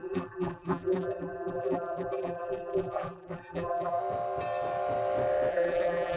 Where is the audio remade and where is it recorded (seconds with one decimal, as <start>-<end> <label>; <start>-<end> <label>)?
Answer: 0.0-4.0 remade; 4.0-5.5 recorded; 5.5-6.2 remade